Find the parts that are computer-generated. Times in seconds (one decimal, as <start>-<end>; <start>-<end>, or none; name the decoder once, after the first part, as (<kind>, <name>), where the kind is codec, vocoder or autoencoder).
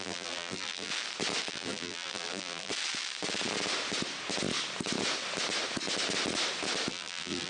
0.0-0.9 (vocoder, BigVGAN v2); 1.5-2.7; 6.9-7.5